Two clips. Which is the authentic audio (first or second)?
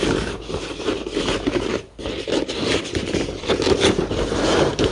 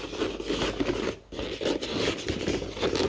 second